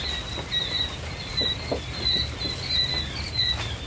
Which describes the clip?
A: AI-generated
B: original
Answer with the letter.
B